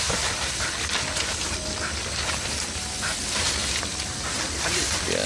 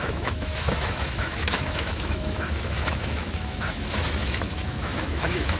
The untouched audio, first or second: first